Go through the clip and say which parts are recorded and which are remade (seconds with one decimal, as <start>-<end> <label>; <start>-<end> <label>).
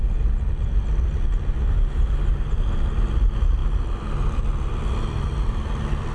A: 0.0-6.1 recorded